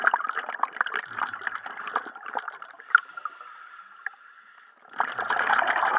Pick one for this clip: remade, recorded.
remade